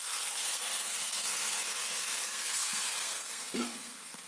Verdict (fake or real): fake